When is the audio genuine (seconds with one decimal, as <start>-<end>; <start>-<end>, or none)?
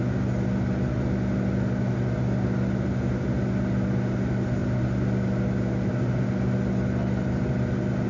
0.0-8.1